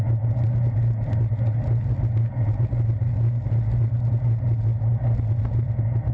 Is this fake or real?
real